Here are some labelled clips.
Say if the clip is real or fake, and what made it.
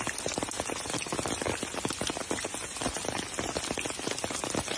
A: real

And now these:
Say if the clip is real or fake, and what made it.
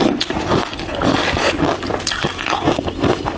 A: real